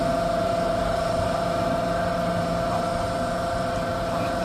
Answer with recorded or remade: remade